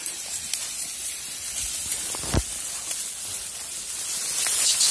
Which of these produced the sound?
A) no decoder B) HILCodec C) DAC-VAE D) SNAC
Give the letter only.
A